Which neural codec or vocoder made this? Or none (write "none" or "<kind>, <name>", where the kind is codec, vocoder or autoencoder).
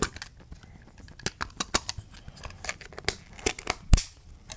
none